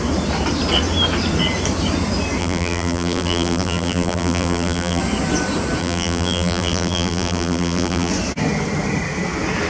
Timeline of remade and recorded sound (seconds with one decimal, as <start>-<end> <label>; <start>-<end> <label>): 0.0-2.4 recorded; 2.4-5.0 remade; 5.0-5.8 recorded; 5.8-8.1 remade; 8.1-9.7 recorded